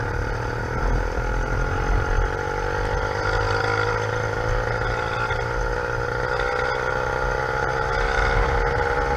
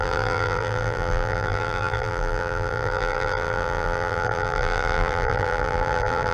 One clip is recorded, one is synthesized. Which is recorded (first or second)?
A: first